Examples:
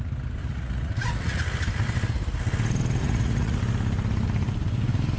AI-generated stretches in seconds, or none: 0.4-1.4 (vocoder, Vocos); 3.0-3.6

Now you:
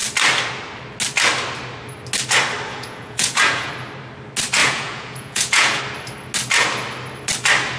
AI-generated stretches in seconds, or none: 2.7-3.7 (vocoder, Vocos); 4.6-5.8